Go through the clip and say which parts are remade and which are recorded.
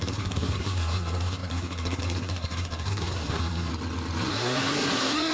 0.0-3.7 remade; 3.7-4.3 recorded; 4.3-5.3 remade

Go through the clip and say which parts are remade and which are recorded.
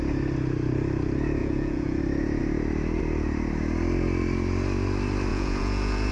0.0-1.4 recorded; 1.4-2.0 remade; 2.0-5.3 recorded; 5.3-6.1 remade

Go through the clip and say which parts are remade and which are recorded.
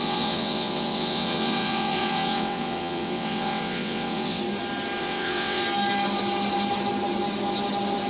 0.0-4.4 remade; 4.4-5.0 recorded; 5.0-5.6 remade; 5.6-8.1 recorded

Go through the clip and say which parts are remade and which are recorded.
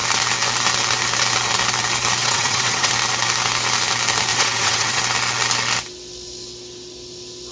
0.0-2.2 recorded; 2.2-2.9 remade; 2.9-4.3 recorded; 4.3-5.0 remade; 5.0-7.5 recorded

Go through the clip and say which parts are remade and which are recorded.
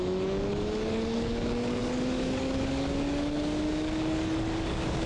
0.0-5.1 remade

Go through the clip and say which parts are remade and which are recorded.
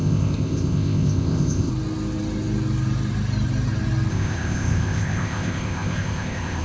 0.0-1.7 remade; 1.7-4.1 recorded; 4.1-6.6 remade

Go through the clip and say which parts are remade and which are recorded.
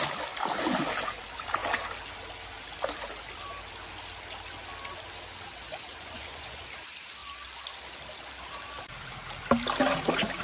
0.0-5.9 recorded; 5.9-6.6 remade; 6.6-10.4 recorded